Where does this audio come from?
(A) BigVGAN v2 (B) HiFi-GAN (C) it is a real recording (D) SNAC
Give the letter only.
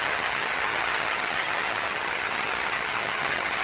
B